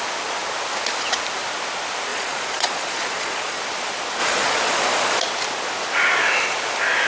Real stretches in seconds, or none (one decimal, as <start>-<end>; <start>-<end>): 0.0-2.1; 3.6-4.2; 5.2-7.1